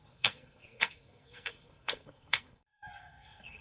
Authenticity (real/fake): fake